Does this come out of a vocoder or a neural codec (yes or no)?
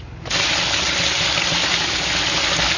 no